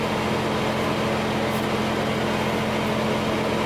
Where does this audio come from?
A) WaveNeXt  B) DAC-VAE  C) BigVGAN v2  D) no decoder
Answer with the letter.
D